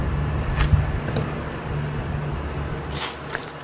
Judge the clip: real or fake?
real